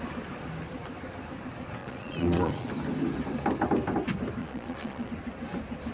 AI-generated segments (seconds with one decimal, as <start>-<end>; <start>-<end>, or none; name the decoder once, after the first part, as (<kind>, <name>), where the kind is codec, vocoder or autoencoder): 1.8-2.7 (vocoder, Vocos); 4.4-5.1